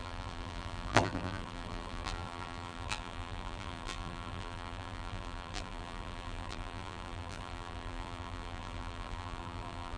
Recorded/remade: remade